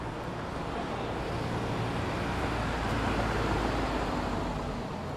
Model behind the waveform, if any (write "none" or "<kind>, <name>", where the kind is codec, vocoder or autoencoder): none